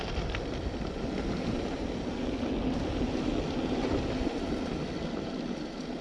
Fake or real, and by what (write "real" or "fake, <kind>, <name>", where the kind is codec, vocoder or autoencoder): real